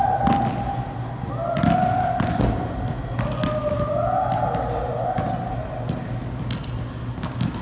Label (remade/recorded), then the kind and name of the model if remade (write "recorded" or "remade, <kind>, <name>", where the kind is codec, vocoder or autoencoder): recorded